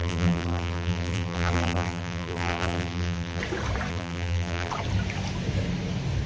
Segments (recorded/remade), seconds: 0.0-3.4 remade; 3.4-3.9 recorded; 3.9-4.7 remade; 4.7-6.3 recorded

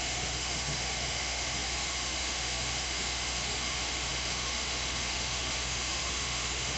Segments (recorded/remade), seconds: 0.0-6.8 remade

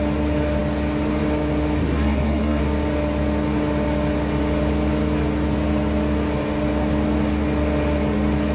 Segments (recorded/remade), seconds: 0.0-1.8 recorded; 1.8-2.6 remade; 2.6-8.5 recorded

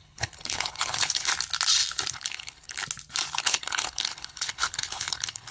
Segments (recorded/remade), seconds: 0.0-1.3 remade; 1.3-2.1 recorded; 2.1-2.8 remade; 2.8-3.4 recorded; 3.4-5.5 remade

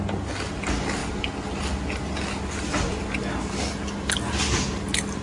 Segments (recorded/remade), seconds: 0.0-5.2 recorded